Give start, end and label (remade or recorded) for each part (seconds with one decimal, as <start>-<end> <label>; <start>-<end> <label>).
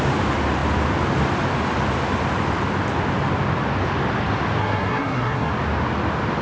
0.0-4.6 recorded; 4.6-5.5 remade; 5.5-6.4 recorded